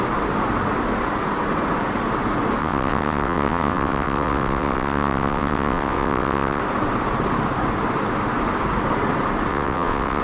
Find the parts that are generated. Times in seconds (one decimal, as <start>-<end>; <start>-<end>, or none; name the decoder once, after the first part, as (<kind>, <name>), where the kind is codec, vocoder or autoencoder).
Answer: 2.6-6.6 (vocoder, WaveNeXt); 9.5-10.2